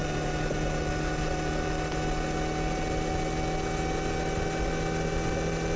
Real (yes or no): yes